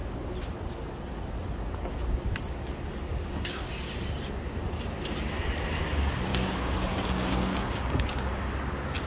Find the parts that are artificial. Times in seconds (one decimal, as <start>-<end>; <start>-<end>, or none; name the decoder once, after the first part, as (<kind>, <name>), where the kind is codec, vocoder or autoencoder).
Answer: 3.1-3.7 (codec, DAC); 6.3-8.5